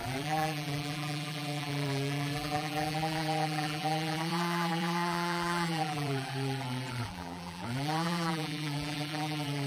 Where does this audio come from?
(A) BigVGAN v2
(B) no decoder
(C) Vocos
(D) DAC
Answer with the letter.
A